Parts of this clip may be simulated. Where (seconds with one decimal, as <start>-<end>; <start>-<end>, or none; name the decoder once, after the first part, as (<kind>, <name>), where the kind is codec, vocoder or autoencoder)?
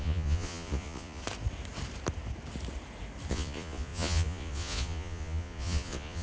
0.0-1.2 (vocoder, Vocos); 3.3-6.2